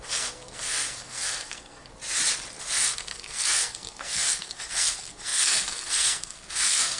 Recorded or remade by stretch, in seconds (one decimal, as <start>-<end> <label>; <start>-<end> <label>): 0.0-1.9 remade; 1.9-2.6 recorded; 2.6-7.0 remade